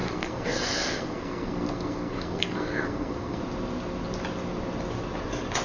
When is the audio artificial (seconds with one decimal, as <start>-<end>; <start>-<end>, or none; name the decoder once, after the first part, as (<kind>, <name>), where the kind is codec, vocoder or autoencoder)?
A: 0.0-3.4 (codec, SNAC)

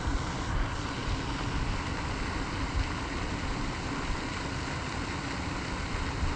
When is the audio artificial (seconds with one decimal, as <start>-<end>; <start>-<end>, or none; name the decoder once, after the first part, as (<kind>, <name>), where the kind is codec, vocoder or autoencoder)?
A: none

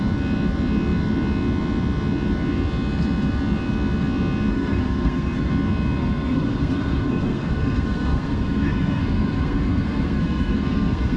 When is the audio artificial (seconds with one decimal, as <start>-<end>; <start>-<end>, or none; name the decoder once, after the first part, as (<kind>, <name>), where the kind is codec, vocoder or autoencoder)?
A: 4.5-5.5 (codec, SNAC); 6.0-11.2

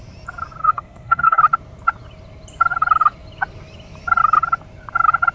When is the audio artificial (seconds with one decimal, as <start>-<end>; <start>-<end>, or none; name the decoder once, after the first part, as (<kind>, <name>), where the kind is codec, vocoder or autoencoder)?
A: 0.6-1.4 (codec, SNAC)

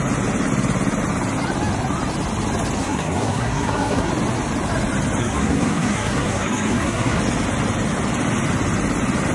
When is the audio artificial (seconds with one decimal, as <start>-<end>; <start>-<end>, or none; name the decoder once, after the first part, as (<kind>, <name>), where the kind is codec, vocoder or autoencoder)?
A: 2.8-4.1 (codec, SNAC); 5.2-7.2

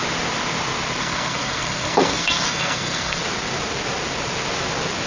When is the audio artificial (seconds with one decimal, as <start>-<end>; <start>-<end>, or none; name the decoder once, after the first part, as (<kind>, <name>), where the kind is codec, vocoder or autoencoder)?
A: 1.0-3.2 (codec, SNAC)

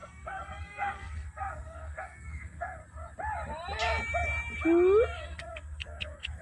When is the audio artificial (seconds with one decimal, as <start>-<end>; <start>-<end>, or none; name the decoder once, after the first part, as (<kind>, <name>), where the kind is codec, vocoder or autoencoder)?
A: 0.0-2.8 (codec, SNAC); 5.2-6.4

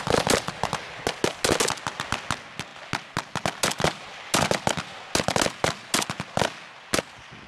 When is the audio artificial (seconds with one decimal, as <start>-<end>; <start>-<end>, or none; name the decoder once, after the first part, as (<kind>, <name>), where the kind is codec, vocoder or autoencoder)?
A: none